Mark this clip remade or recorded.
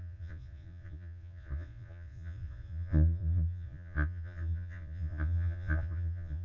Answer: remade